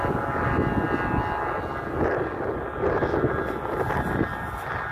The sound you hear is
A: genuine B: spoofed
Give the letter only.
A